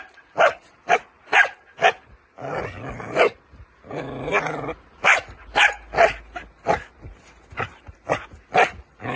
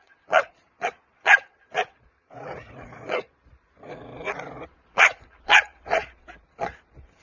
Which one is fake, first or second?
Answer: second